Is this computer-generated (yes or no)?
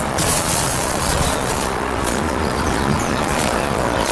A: yes